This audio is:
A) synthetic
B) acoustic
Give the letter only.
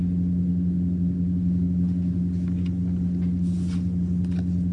B